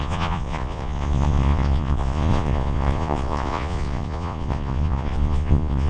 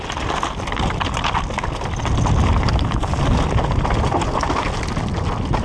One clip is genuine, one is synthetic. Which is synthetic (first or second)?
first